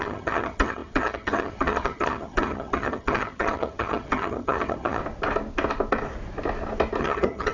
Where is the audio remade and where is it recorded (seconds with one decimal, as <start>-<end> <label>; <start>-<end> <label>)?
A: 0.0-5.0 remade; 5.0-7.0 recorded; 7.0-7.5 remade